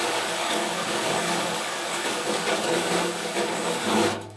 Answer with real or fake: fake